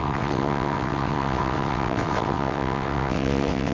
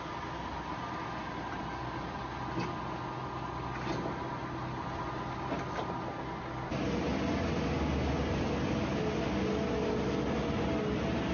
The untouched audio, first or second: second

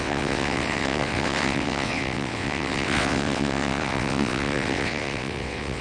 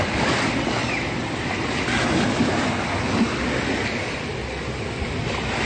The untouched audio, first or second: second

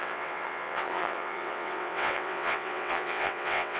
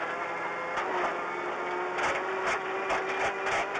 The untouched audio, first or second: second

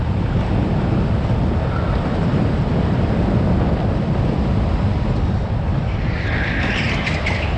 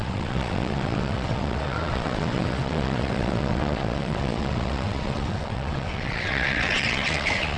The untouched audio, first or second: first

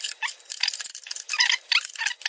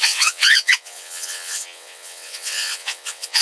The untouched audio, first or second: first